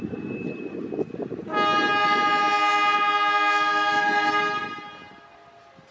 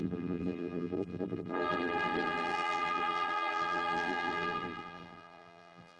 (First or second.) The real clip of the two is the first